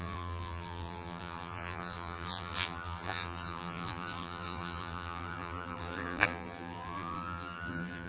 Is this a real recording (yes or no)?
no